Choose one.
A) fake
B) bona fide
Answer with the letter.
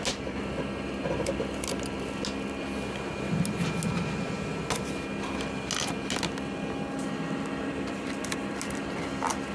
B